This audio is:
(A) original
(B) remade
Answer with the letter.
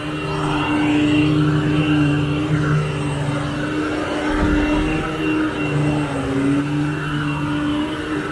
A